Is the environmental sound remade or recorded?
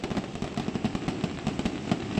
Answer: recorded